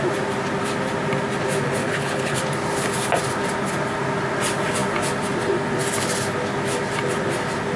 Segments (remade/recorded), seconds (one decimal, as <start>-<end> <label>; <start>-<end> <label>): 0.0-1.8 recorded; 1.8-2.4 remade; 2.4-7.8 recorded